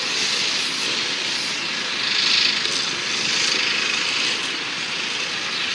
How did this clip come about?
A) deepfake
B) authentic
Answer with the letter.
B